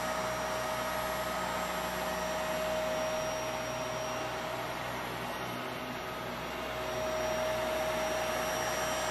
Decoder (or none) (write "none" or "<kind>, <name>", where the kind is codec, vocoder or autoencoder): none